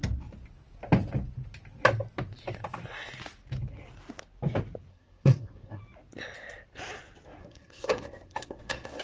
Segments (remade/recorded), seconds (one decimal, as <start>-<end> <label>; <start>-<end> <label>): 0.0-4.9 recorded; 4.9-5.8 remade; 5.8-7.4 recorded; 7.4-9.0 remade